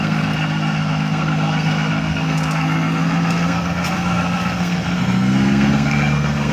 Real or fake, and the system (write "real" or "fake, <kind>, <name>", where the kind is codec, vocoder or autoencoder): fake, codec, SNAC